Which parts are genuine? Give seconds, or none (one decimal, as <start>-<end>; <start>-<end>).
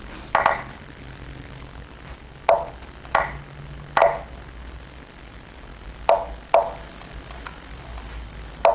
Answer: 0.0-8.7